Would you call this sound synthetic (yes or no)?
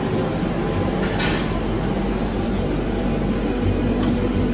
no